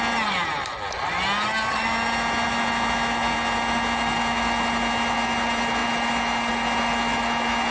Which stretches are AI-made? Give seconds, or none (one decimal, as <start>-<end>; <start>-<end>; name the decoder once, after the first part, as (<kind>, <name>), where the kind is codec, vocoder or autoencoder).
none